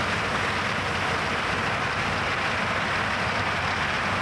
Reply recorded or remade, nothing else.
recorded